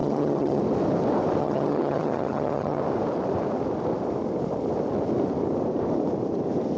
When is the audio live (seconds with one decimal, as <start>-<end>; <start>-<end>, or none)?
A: 0.6-1.4; 2.8-6.8

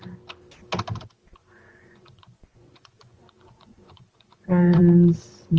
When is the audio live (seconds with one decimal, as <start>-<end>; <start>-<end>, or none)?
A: 0.0-1.4; 4.8-5.6

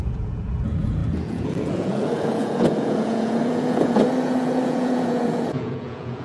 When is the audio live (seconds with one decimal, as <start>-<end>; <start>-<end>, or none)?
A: none

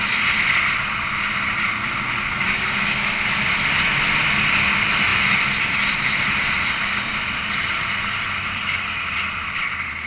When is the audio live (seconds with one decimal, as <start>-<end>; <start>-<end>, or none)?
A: 0.0-2.2; 3.3-10.1

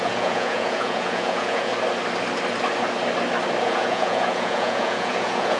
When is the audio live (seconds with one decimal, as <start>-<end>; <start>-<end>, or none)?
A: 1.7-3.6

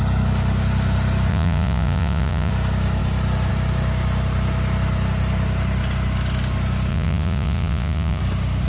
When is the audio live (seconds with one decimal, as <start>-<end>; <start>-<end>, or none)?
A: 0.0-1.3; 2.5-6.9; 8.2-8.7

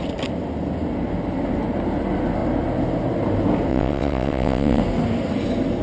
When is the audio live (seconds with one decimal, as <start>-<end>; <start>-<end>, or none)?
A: 0.0-3.7; 4.8-5.8